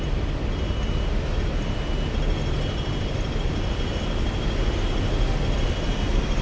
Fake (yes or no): no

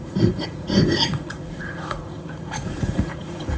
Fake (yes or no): yes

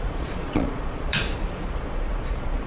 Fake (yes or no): yes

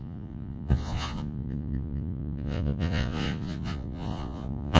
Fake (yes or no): yes